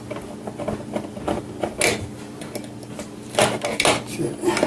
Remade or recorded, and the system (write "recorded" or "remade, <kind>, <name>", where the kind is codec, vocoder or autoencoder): recorded